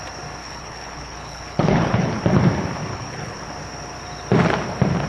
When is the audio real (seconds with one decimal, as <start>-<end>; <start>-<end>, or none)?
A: 0.0-0.4; 2.2-2.9; 3.5-5.1